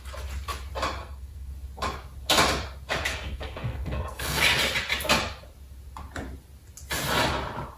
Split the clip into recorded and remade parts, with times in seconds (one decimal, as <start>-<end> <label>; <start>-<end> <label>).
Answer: 0.0-1.0 recorded; 1.0-1.5 remade; 1.5-3.1 recorded; 3.1-4.4 remade; 4.4-7.8 recorded